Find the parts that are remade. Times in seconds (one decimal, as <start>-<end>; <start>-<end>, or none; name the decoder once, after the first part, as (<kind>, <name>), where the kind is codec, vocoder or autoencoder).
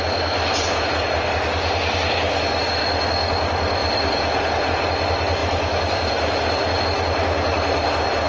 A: 1.0-1.8 (vocoder, BigVGAN v2); 3.8-4.7; 5.4-6.8